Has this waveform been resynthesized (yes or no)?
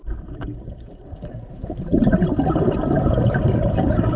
yes